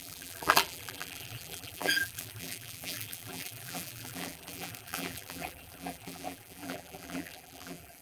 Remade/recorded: remade